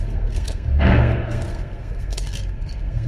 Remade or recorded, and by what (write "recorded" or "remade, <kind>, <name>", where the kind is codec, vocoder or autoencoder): remade, codec, SNAC